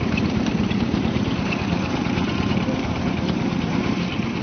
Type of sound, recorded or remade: remade